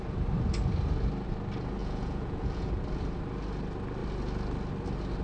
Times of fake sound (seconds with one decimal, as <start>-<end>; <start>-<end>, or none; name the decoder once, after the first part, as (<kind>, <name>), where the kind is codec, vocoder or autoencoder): 1.8-2.8 (vocoder, Vocos)